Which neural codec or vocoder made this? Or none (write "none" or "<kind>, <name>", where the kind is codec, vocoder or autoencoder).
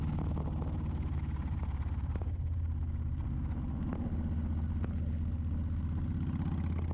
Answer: none